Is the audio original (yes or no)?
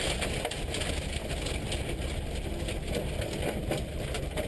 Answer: yes